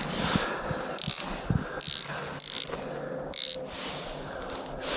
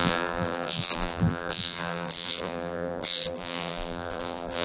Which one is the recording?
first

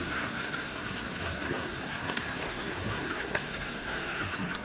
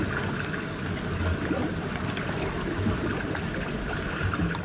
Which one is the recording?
second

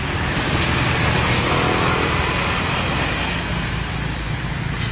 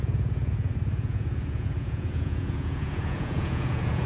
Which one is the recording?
first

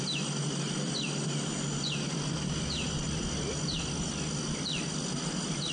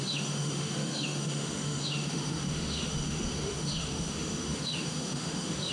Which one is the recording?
first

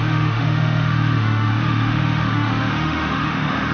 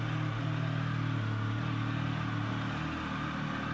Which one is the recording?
second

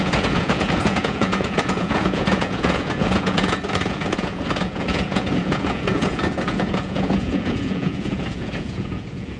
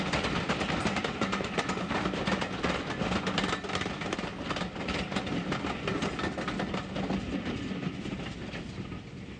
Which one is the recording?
second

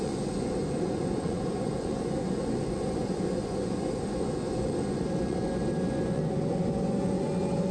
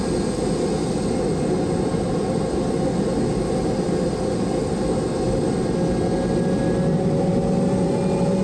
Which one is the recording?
second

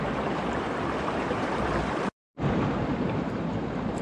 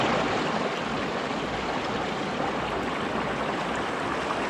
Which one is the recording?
second